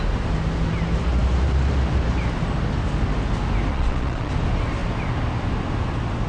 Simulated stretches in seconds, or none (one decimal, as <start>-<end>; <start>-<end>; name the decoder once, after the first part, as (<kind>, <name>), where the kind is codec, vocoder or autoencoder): 3.7-4.3 (vocoder, Vocos)